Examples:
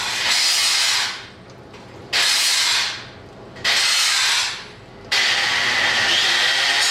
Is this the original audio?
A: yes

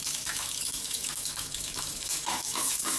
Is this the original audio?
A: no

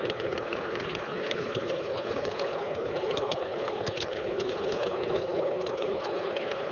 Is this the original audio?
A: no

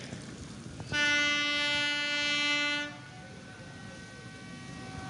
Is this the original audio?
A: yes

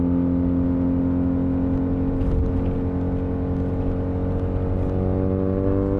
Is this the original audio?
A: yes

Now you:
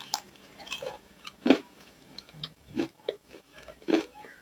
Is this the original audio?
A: no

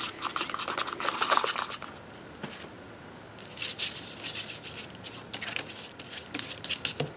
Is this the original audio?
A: yes